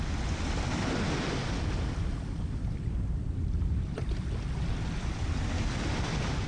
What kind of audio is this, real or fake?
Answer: real